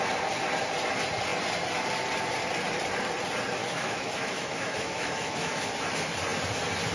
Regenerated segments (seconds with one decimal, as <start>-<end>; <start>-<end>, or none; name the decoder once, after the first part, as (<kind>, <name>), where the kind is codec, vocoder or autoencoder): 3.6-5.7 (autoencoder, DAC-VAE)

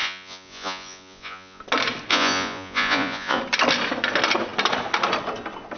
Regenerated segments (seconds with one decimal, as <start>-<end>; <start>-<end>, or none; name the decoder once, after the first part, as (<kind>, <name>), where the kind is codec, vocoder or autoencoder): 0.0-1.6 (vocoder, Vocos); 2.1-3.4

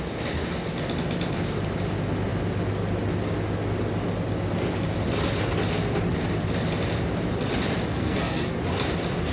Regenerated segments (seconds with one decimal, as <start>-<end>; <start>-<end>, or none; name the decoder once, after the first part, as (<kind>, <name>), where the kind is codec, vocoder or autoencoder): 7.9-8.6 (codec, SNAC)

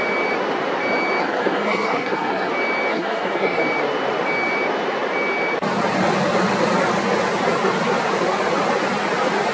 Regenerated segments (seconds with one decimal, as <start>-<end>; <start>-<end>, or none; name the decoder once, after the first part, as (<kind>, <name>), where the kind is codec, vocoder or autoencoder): 1.2-2.5 (codec, SNAC); 2.9-3.6

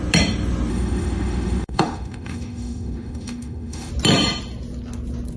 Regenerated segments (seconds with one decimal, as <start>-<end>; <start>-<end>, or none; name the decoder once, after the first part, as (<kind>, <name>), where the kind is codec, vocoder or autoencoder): 0.7-3.9 (autoencoder, DAC-VAE)

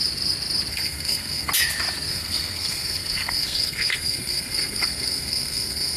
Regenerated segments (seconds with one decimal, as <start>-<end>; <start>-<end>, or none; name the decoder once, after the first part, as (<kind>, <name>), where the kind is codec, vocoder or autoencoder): 0.7-1.5 (codec, SNAC); 2.1-6.0

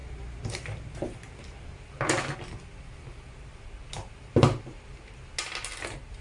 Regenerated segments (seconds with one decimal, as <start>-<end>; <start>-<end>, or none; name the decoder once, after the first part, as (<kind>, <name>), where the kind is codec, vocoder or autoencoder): none